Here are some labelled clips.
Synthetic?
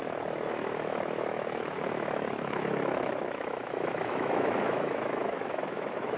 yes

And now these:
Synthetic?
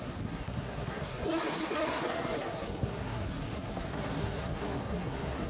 yes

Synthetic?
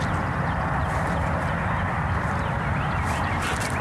yes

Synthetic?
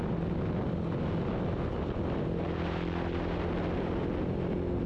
no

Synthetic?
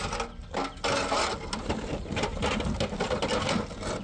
no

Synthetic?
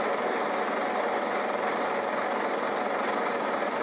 no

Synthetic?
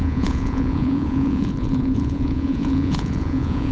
yes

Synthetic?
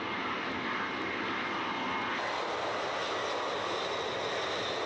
no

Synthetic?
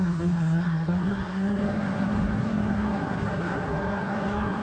yes